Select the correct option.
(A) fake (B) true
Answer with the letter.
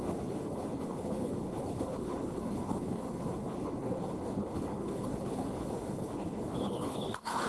A